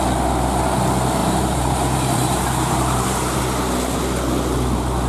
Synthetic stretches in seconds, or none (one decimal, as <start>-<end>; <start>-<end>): 1.2-3.4